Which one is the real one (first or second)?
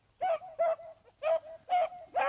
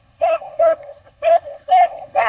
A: first